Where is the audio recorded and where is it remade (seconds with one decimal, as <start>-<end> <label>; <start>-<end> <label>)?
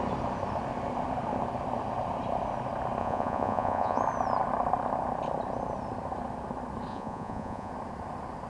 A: 0.0-3.0 recorded; 3.0-4.0 remade; 4.0-6.9 recorded; 6.9-7.7 remade; 7.7-8.5 recorded